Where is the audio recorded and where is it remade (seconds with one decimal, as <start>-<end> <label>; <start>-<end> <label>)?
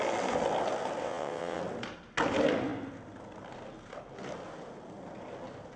0.0-1.0 recorded; 1.0-1.6 remade; 1.6-5.8 recorded